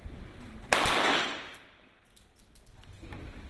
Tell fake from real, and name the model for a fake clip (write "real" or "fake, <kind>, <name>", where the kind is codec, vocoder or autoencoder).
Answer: real